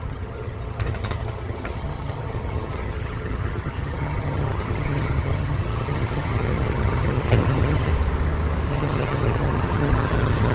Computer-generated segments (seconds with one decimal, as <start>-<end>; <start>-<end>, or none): 0.0-7.9; 8.7-10.5